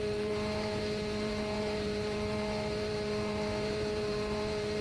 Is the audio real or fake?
fake